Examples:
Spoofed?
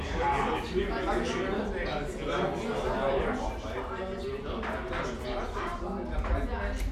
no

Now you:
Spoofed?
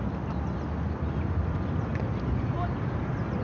no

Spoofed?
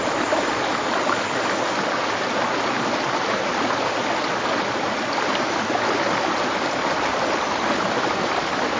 no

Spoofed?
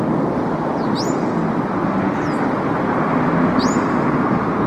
no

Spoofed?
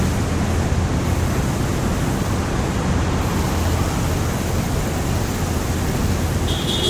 no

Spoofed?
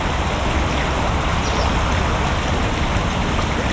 no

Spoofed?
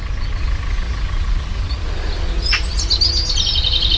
no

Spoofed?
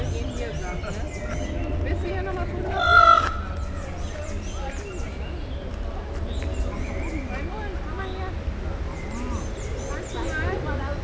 no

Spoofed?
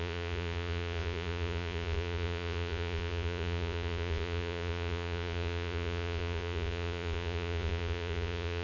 yes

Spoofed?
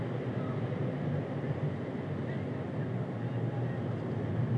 no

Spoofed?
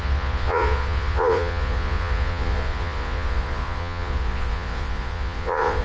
yes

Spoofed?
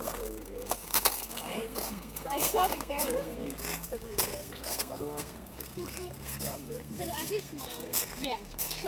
yes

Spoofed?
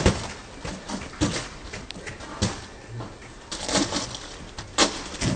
no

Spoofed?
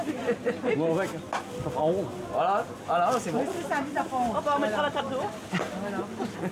no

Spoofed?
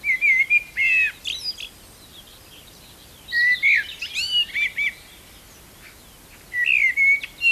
no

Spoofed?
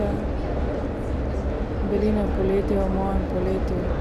no